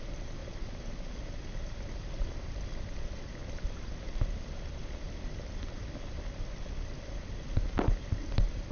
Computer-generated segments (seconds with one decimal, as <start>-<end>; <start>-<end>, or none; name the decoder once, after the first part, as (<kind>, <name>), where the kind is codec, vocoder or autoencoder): none